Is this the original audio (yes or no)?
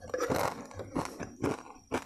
yes